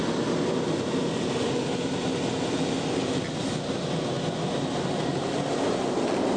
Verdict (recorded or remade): recorded